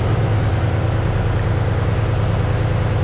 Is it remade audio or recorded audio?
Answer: recorded